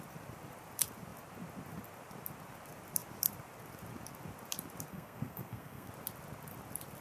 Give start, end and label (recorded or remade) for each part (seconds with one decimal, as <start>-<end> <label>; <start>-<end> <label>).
0.0-4.9 recorded; 4.9-5.9 remade; 5.9-7.0 recorded